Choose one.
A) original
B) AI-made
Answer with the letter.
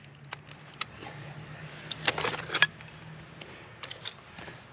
A